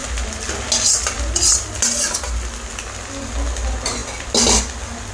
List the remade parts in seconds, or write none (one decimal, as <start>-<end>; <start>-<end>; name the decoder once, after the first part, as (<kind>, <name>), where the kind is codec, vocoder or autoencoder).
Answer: none